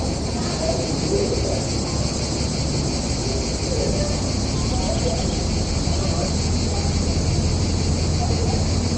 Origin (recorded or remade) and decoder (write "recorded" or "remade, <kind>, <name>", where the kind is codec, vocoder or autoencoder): recorded